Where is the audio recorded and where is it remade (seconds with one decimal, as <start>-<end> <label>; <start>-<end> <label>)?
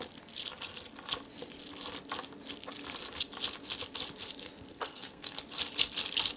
0.0-4.7 recorded; 4.7-5.4 remade; 5.4-6.4 recorded